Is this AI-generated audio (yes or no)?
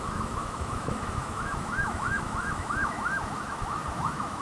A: yes